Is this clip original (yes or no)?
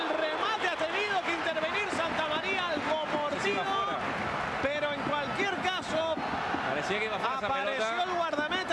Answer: yes